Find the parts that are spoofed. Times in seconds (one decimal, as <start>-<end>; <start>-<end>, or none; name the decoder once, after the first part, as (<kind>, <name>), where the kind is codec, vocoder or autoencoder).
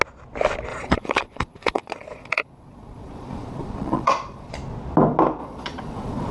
0.7-4.5 (vocoder, Vocos); 5.4-6.3